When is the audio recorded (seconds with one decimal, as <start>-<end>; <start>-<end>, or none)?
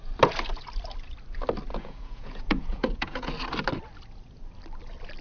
0.0-1.7; 3.3-5.2